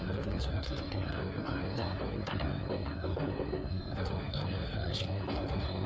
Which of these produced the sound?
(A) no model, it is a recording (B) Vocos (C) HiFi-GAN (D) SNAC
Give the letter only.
D